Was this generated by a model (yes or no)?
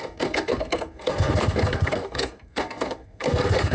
yes